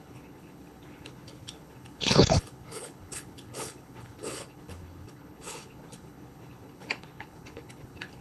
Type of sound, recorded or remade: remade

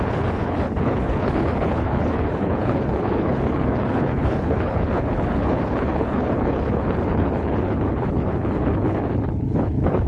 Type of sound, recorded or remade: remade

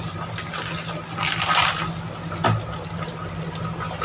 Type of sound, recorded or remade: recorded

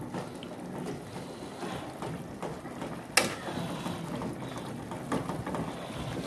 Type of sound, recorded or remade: recorded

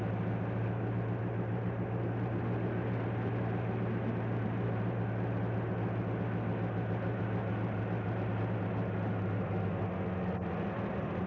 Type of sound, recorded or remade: recorded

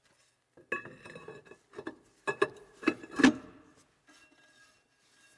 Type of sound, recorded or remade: recorded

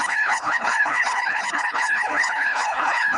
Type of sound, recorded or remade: remade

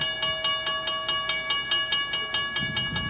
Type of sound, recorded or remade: recorded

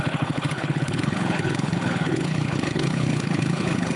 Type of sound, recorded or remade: remade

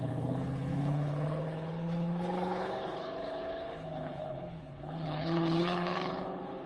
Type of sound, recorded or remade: remade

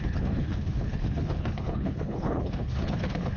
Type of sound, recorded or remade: remade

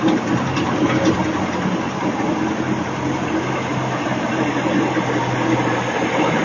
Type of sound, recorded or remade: recorded